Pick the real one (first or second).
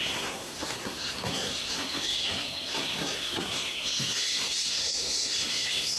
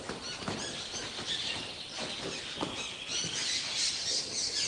second